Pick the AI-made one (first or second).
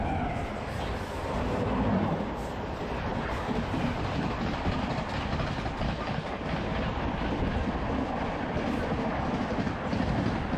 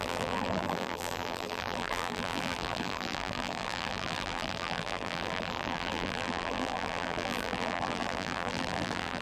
second